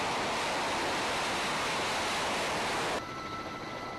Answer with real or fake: real